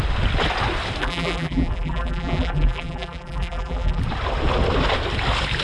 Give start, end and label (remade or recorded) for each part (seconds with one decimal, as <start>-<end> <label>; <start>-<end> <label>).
0.0-1.0 recorded; 1.0-4.0 remade; 4.0-5.6 recorded